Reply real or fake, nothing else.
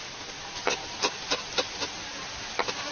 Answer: real